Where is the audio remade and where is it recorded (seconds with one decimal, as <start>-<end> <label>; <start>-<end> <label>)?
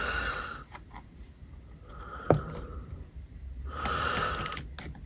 0.0-1.4 remade; 1.4-1.9 recorded; 1.9-4.5 remade; 4.5-5.1 recorded